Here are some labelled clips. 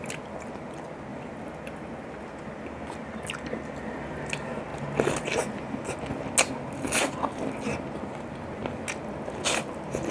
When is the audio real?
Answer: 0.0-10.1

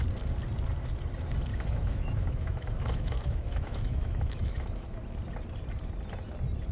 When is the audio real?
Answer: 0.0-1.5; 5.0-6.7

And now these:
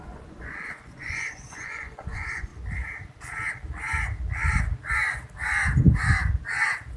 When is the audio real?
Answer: 2.5-7.0